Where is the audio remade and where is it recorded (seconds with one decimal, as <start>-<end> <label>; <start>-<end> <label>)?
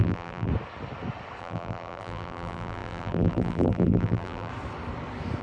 0.0-0.5 remade; 0.5-1.4 recorded; 1.4-4.5 remade; 4.5-5.4 recorded